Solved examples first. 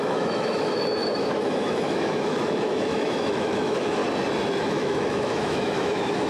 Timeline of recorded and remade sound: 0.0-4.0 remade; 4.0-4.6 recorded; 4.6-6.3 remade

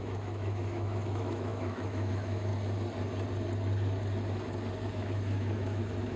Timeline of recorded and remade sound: 0.0-2.5 remade; 2.5-4.9 recorded; 4.9-6.2 remade